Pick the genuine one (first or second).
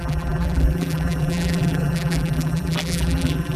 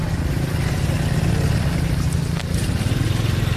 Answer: second